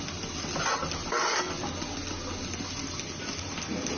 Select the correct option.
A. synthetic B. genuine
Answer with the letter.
B